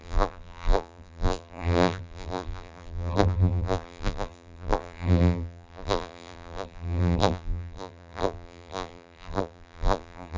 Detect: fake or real fake